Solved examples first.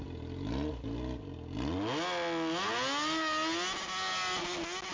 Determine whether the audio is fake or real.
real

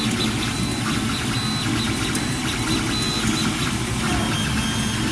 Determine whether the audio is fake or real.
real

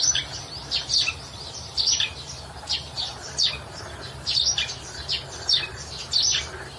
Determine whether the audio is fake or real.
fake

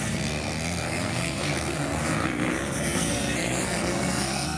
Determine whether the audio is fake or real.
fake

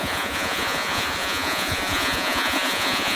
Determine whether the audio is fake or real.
fake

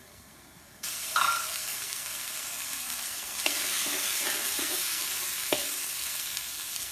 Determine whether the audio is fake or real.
fake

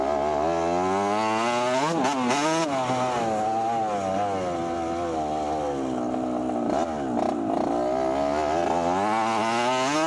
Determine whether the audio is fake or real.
real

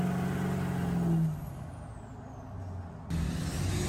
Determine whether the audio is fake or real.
real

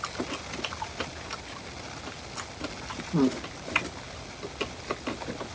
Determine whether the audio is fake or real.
real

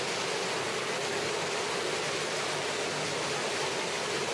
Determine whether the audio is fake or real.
real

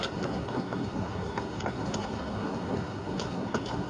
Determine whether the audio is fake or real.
fake